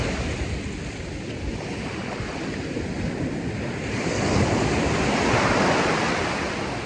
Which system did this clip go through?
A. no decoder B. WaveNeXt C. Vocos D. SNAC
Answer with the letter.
A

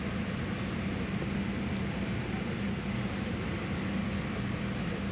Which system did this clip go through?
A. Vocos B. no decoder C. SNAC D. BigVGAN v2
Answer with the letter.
B